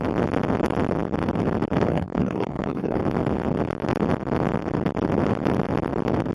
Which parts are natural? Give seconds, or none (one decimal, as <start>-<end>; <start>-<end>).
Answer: 0.0-1.9; 3.0-6.3